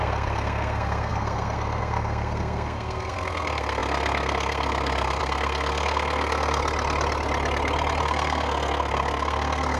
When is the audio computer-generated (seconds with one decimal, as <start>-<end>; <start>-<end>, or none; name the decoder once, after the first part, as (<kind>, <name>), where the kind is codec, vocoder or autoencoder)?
0.0-6.6 (codec, SNAC); 8.0-9.8